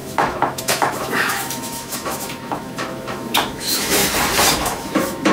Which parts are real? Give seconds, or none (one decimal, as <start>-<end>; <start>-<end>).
4.0-4.5

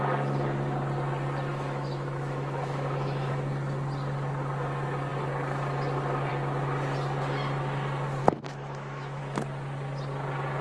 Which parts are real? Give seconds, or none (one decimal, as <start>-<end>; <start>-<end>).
0.0-1.5; 3.3-8.2; 9.2-10.6

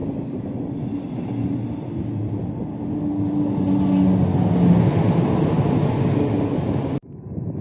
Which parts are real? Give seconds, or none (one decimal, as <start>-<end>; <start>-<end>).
0.0-7.6

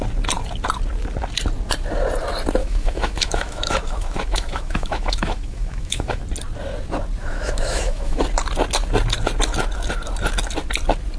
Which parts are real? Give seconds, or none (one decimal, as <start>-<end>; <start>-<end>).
0.0-2.6; 6.2-7.2; 8.2-11.2